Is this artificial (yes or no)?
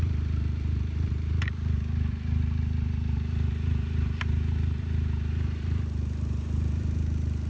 yes